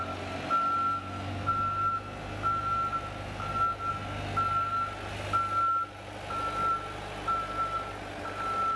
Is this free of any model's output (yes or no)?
yes